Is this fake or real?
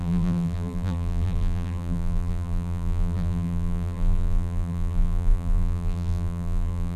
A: fake